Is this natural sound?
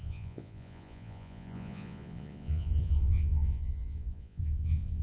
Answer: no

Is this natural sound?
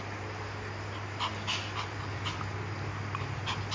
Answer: yes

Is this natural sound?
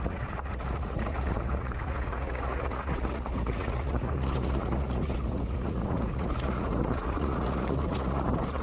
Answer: no